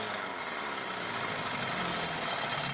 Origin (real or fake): real